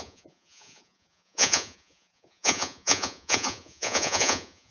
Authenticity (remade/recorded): remade